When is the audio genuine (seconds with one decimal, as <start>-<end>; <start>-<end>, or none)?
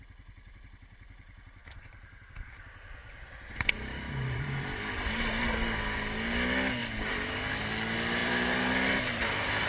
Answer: 0.0-8.2; 9.2-9.7